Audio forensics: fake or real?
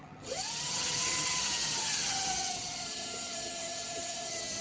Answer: fake